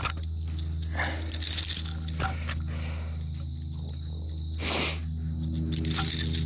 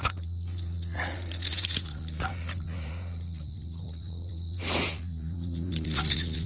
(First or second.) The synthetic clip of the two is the second